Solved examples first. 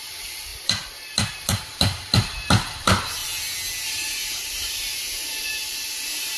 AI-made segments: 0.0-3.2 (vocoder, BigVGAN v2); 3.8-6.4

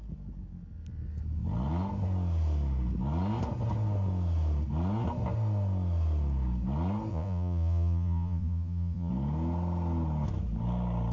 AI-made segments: 7.1-9.1 (vocoder, Vocos)

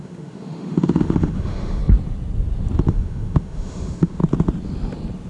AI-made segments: 0.0-1.8 (autoencoder, DAC-VAE); 2.9-4.2

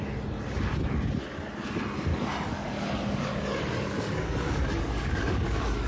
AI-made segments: 2.1-5.9 (codec, DAC)

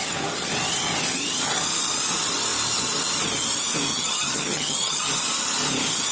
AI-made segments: 3.9-5.1 (vocoder, HiFi-GAN)

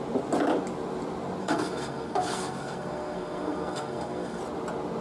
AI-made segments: 1.4-4.4 (codec, SNAC)

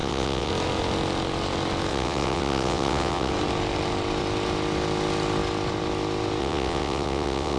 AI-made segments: 0.0-0.5 (vocoder, WaveNeXt); 1.9-3.3; 6.4-7.6